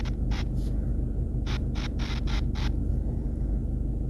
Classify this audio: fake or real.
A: real